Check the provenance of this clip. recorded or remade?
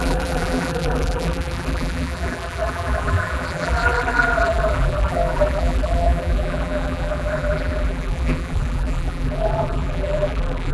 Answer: remade